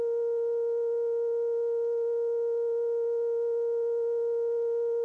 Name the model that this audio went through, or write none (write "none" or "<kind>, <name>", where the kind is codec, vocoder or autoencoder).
none